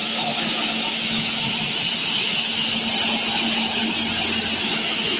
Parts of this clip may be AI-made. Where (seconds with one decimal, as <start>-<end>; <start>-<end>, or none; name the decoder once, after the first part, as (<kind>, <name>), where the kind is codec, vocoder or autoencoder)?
0.0-2.7 (autoencoder, DAC-VAE); 3.3-3.8; 4.6-5.2